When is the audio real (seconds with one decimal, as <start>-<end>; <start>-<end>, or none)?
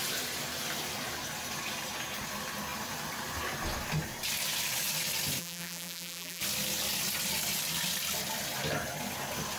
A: 0.0-5.4; 6.4-9.6